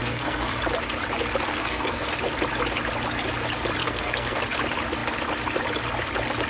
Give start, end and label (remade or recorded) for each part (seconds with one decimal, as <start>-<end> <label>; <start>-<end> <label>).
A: 0.0-0.5 remade; 0.5-1.5 recorded; 1.5-2.0 remade; 2.0-3.8 recorded; 3.8-4.4 remade; 4.4-6.5 recorded